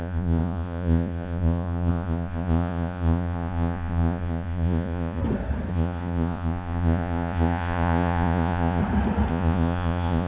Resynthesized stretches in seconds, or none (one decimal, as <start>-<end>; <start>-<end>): 0.0-5.2; 5.7-8.8; 9.3-10.3